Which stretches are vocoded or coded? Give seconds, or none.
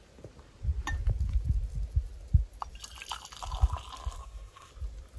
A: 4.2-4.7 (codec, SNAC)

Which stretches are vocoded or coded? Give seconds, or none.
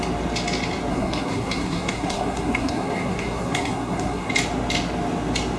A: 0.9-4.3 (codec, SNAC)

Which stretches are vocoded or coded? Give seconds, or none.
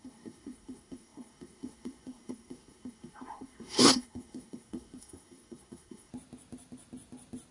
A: 0.0-6.1 (codec, SNAC)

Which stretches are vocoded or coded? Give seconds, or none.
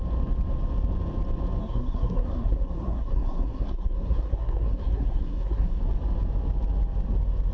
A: 1.6-5.8 (codec, SNAC)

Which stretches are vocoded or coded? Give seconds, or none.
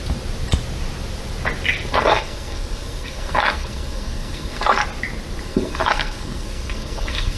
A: 1.9-4.8 (codec, SNAC); 5.4-7.4